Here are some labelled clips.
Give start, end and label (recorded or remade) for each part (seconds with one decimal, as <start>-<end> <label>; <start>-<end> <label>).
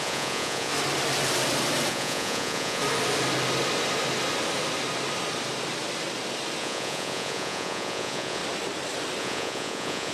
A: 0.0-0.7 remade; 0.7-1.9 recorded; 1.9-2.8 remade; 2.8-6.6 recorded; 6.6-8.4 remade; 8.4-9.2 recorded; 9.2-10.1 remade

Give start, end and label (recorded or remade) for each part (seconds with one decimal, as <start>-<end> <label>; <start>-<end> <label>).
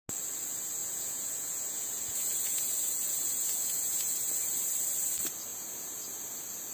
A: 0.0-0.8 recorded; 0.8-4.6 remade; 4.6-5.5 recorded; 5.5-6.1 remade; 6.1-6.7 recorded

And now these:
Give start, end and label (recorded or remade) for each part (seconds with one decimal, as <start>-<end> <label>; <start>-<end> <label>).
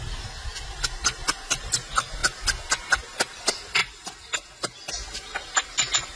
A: 0.0-6.2 recorded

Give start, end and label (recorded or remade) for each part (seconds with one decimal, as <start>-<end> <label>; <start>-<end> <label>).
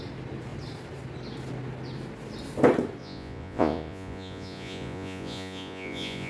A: 0.0-3.0 recorded; 3.0-6.3 remade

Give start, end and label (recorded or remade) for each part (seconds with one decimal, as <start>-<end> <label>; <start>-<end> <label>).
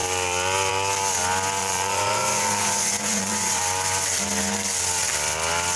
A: 0.0-1.6 recorded; 1.6-3.6 remade; 3.6-5.8 recorded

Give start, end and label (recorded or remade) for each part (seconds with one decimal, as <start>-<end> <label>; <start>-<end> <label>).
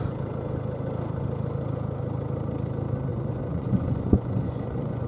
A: 0.0-3.1 recorded; 3.1-5.1 remade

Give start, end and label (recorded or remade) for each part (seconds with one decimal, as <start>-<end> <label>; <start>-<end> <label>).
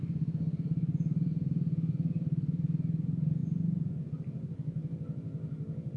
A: 0.0-6.0 recorded